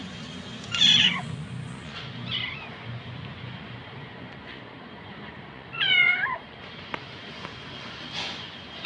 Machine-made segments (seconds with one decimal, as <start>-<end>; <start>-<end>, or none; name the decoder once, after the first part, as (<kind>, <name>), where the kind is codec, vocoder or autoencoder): 0.0-8.9 (vocoder, Vocos)

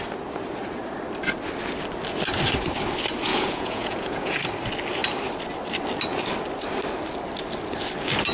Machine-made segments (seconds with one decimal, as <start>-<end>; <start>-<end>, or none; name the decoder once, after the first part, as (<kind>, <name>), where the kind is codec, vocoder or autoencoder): 3.3-4.4 (vocoder, Vocos)